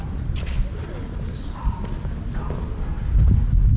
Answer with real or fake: real